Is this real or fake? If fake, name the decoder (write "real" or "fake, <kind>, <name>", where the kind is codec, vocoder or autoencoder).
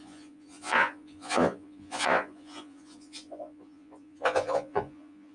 fake, vocoder, Vocos